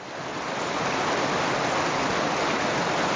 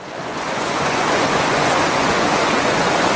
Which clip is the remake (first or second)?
second